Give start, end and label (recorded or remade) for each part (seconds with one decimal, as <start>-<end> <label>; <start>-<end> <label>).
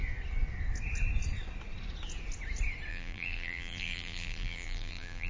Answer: 0.0-2.9 recorded; 2.9-5.3 remade